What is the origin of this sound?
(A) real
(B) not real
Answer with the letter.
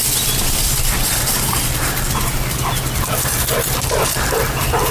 A